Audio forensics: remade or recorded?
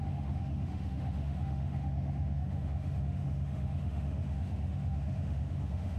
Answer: remade